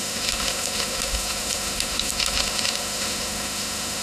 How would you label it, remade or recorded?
remade